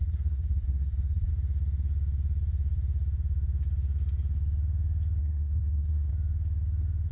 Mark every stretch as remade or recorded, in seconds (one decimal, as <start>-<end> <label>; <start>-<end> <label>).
0.0-1.3 remade; 1.3-5.2 recorded; 5.2-6.1 remade; 6.1-7.1 recorded